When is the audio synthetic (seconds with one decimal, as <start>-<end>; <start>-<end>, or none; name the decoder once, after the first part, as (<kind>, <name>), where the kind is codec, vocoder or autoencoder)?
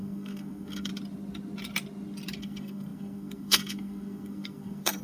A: 0.0-0.9 (codec, SNAC); 2.4-5.0